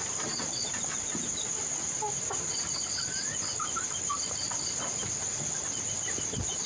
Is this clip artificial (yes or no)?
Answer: no